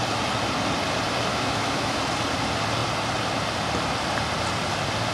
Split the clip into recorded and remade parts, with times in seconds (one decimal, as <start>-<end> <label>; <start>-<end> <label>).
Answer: 0.0-1.3 recorded; 1.3-2.1 remade; 2.1-5.1 recorded